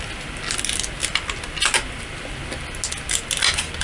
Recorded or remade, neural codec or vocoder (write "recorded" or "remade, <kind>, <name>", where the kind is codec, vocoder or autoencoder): recorded